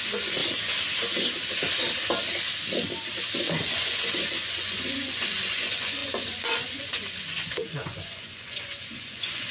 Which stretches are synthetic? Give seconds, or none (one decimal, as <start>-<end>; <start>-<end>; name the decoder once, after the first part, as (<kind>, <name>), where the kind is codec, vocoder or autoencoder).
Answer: 0.0-0.4 (vocoder, Vocos); 3.5-9.5